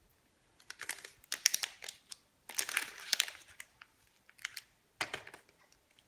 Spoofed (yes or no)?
no